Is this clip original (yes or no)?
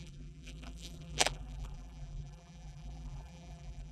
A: no